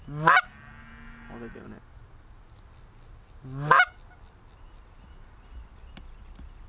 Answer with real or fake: real